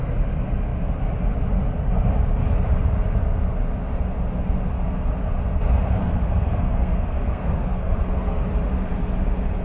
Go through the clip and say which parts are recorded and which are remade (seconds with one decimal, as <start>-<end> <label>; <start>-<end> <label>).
0.0-6.0 recorded; 6.0-8.4 remade; 8.4-9.6 recorded